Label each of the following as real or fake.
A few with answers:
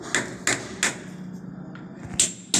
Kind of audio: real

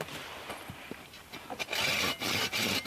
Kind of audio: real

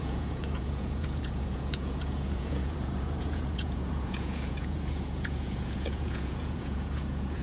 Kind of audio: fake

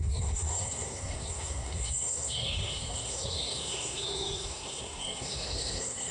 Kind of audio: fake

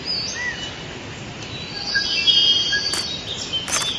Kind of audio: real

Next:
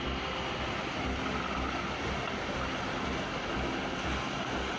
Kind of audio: real